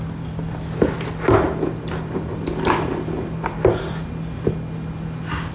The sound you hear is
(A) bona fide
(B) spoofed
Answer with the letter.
A